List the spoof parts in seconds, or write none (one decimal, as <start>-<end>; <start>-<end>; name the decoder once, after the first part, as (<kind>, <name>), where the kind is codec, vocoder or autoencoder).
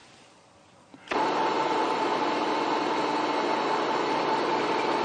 0.0-3.0 (vocoder, BigVGAN v2)